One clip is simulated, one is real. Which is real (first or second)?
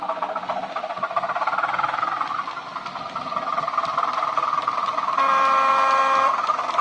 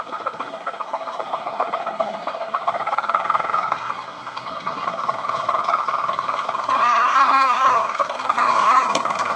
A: first